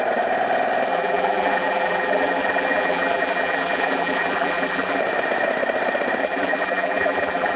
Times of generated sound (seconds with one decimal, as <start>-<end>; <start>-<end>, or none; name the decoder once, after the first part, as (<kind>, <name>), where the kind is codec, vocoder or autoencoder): 0.9-5.0 (vocoder, BigVGAN v2); 6.2-7.6